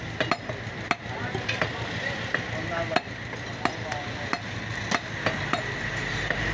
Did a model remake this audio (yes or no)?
no